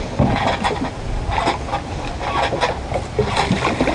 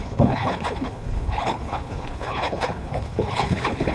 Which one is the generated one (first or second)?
second